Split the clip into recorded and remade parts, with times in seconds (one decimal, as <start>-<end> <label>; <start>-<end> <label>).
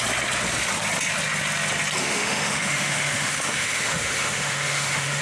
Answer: 0.0-2.0 recorded; 2.0-5.2 remade